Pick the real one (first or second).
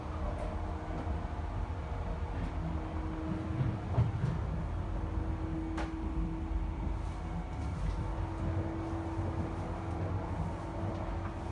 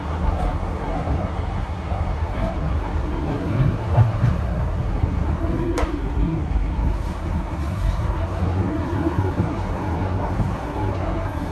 first